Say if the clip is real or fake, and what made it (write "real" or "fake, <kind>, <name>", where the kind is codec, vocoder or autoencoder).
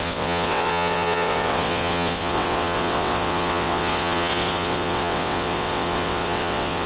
fake, vocoder, WaveNeXt